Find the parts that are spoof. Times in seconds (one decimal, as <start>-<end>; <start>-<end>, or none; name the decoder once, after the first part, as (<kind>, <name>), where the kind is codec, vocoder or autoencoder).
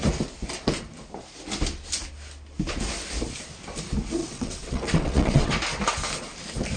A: 4.2-5.5 (vocoder, WaveNeXt)